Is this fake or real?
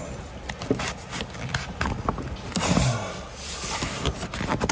real